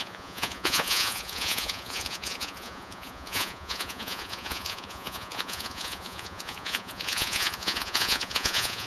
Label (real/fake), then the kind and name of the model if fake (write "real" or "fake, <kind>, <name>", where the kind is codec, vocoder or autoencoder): fake, vocoder, Vocos